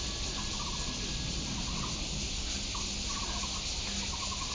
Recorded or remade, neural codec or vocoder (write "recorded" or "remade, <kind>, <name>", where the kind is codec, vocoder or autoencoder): recorded